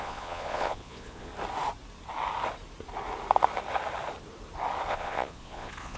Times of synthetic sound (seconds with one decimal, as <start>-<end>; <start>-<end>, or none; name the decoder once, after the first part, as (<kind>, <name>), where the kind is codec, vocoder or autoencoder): 0.0-1.3 (vocoder, Vocos); 4.9-6.0